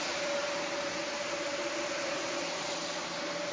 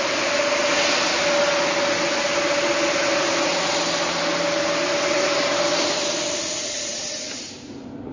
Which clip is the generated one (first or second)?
first